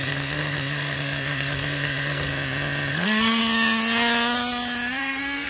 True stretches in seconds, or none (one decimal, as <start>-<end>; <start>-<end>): 2.3-2.9; 3.4-5.0